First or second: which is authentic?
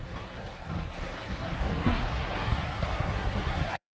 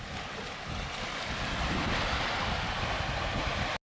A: second